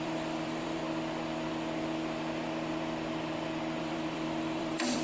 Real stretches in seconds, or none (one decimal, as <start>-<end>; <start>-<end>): 0.8-3.8